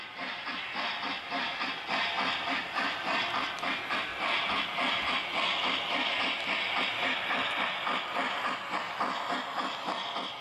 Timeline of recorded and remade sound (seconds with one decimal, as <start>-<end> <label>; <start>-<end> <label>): 0.0-10.4 remade

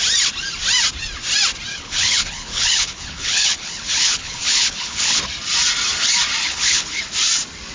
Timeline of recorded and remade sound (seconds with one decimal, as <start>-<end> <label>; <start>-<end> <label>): 0.0-1.7 recorded; 1.7-5.2 remade; 5.2-6.4 recorded; 6.4-7.0 remade; 7.0-7.7 recorded